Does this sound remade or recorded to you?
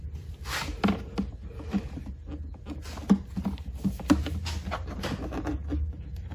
recorded